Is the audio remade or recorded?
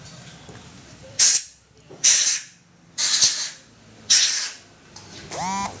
recorded